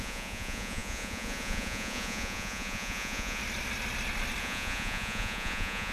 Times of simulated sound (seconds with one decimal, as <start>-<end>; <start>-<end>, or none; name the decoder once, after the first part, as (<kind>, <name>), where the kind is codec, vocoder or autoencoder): 0.0-3.4 (vocoder, Vocos); 4.4-5.9